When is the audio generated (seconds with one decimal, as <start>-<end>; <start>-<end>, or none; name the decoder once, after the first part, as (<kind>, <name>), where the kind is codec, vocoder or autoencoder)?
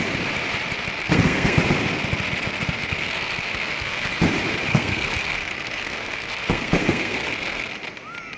1.0-1.6 (codec, SNAC); 2.8-4.1; 4.7-7.7